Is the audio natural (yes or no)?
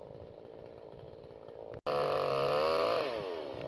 yes